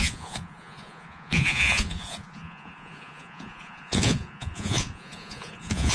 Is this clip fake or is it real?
fake